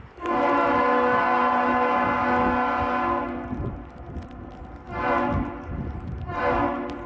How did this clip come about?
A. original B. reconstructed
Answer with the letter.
A